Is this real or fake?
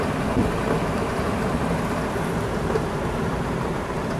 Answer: fake